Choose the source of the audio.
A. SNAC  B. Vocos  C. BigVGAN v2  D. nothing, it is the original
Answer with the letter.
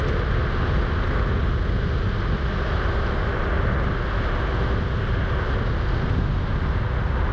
D